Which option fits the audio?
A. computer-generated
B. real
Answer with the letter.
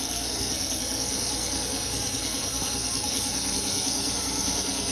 A